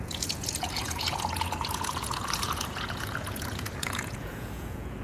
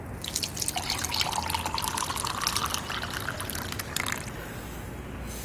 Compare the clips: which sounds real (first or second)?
second